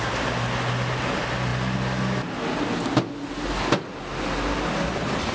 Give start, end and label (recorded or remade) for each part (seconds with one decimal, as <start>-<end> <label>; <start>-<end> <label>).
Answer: 0.0-5.3 recorded